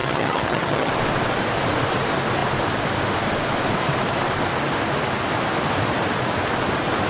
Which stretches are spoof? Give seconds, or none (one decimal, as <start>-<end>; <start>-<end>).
0.0-0.9